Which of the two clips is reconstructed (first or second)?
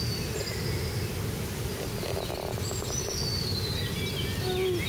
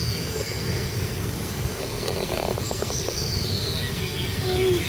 second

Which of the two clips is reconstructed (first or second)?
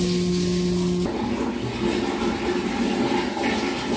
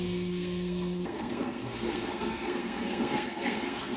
second